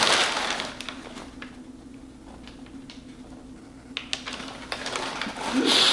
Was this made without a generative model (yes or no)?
yes